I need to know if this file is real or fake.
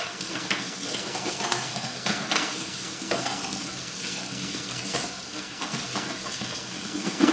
fake